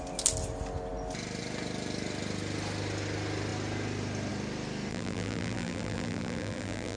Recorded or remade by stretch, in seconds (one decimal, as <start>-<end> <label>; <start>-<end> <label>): 0.0-4.9 recorded; 4.9-7.0 remade